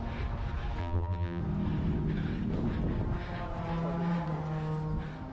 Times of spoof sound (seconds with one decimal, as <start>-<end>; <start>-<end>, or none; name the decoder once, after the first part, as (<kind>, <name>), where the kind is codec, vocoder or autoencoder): 0.8-1.4 (vocoder, BigVGAN v2)